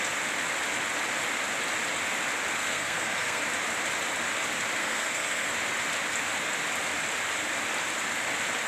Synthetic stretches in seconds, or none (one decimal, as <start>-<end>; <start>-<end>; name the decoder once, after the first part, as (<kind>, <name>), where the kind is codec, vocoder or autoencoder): 2.6-3.4 (codec, SNAC); 4.8-5.5